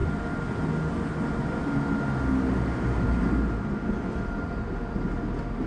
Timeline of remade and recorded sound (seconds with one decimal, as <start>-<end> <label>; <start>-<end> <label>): 0.0-5.7 recorded